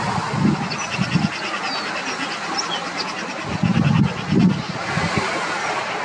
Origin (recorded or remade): recorded